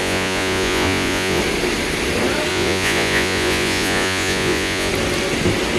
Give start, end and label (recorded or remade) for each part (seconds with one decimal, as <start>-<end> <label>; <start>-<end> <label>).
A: 0.0-1.4 remade; 1.4-2.5 recorded; 2.5-4.9 remade; 4.9-5.8 recorded